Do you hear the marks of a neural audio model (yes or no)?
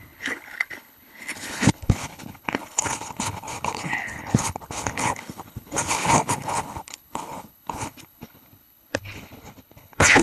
yes